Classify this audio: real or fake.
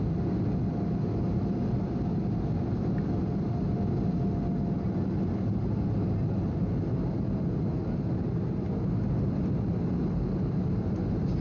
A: real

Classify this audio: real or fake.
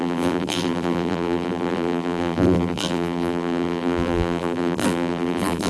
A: fake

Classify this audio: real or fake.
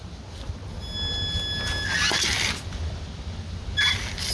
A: real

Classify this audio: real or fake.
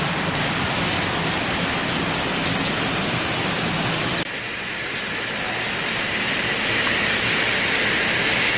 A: real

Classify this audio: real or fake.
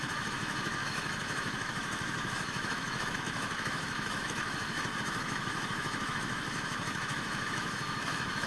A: fake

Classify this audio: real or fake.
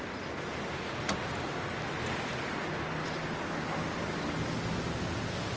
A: real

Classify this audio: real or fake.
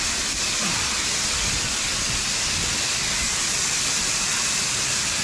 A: real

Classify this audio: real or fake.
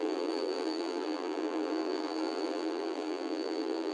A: fake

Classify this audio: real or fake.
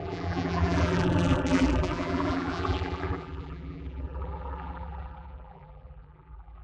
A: fake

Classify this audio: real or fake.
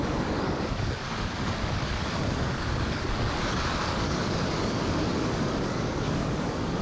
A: fake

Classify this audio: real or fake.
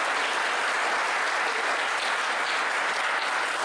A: real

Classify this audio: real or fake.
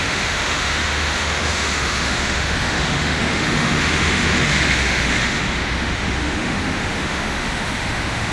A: fake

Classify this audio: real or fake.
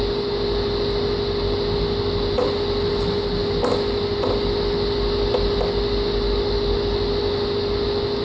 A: real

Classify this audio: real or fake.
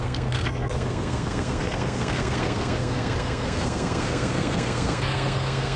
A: fake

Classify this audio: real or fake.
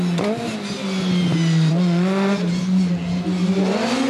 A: real